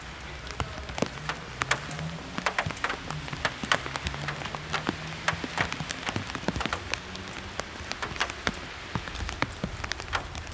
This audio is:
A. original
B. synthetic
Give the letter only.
A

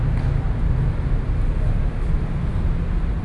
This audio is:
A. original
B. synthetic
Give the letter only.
A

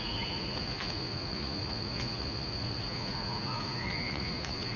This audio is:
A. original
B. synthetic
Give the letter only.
B